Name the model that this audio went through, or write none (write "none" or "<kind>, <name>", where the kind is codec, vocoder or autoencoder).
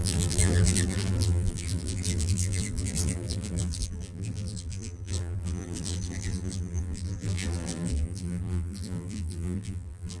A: vocoder, BigVGAN v2